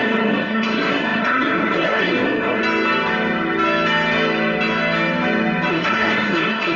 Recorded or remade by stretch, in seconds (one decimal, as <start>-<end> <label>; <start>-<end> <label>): 0.0-2.6 remade; 2.6-5.7 recorded; 5.7-6.8 remade